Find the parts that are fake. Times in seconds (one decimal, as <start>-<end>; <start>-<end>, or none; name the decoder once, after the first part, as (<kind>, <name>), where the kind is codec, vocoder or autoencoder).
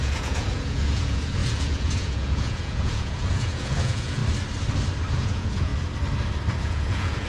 0.0-4.2 (vocoder, Vocos); 5.1-5.7; 6.6-7.3